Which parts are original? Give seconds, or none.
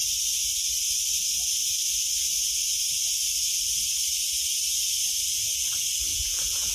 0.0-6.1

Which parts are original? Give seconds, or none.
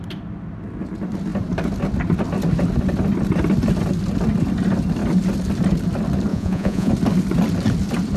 0.0-6.3; 6.9-8.2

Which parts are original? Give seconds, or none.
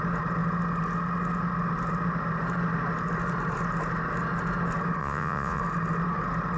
0.0-5.0; 5.6-6.6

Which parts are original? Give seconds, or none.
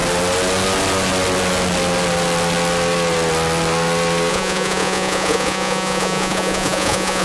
0.0-4.3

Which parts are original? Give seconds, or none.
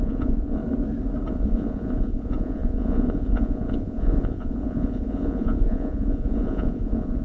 0.6-1.3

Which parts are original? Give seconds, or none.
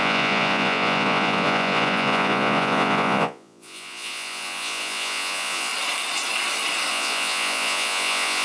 5.7-6.9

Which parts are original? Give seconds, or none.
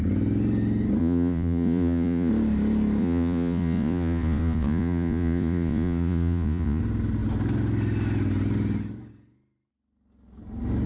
0.0-1.0; 2.3-3.0; 6.8-10.9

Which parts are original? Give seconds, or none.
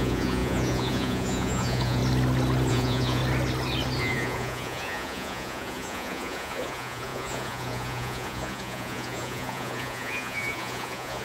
2.0-2.7; 3.2-4.0